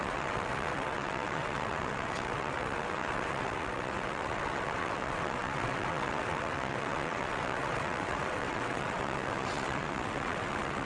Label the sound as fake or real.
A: fake